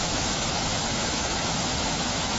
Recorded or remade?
remade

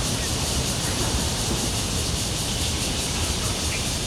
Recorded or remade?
remade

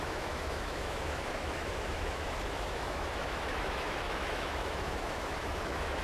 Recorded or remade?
remade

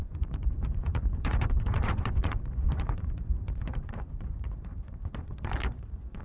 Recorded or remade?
remade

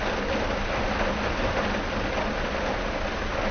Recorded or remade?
recorded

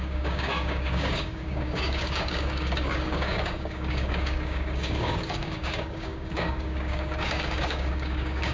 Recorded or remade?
remade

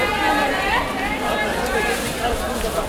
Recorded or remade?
recorded